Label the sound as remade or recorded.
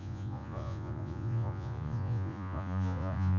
remade